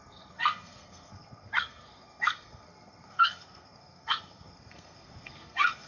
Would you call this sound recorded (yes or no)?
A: no